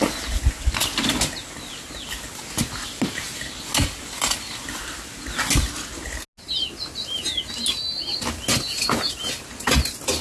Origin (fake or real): real